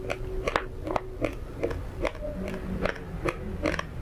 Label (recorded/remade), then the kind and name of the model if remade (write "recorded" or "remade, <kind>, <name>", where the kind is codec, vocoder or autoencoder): recorded